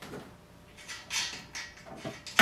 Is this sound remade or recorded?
recorded